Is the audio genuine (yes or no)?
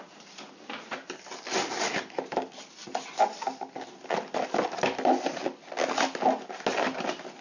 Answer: yes